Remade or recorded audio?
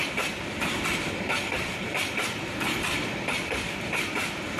remade